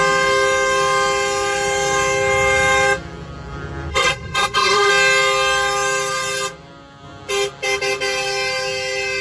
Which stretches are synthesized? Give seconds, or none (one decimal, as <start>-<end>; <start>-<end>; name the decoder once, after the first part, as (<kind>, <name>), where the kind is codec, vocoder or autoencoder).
3.9-4.9 (codec, SNAC)